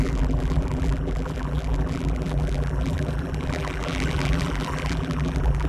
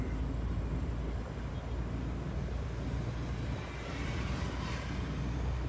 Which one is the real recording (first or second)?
second